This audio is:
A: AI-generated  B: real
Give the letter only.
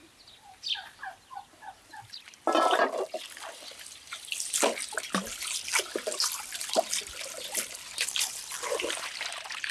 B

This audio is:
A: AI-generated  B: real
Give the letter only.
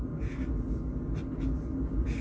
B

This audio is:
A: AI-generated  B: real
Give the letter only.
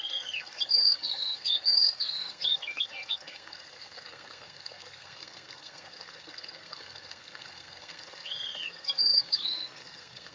A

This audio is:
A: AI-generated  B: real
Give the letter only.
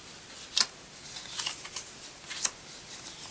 B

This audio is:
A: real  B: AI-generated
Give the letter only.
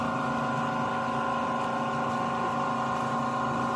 A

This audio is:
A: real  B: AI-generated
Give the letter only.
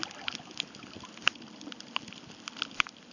A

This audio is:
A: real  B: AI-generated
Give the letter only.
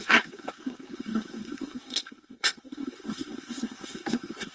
B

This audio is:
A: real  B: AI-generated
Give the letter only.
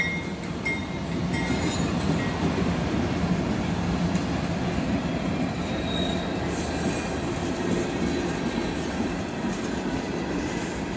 A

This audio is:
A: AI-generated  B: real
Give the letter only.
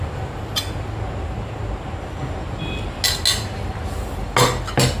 B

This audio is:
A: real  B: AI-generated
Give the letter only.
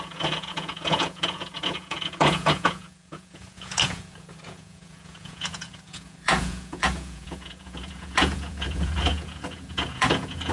B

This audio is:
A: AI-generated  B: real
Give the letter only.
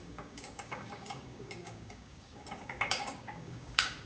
A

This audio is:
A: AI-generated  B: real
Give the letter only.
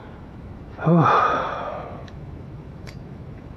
A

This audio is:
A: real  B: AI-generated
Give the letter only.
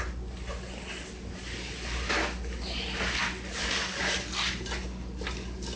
A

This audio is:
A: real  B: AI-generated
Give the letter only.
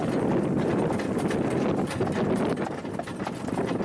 A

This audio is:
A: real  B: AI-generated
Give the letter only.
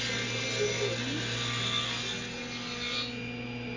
A